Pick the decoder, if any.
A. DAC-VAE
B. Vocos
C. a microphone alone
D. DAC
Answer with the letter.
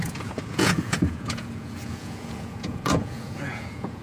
B